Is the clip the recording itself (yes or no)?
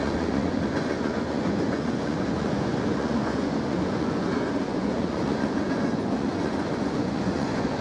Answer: no